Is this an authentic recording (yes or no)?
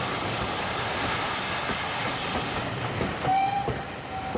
yes